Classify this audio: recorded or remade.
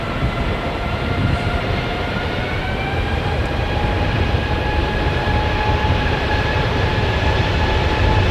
remade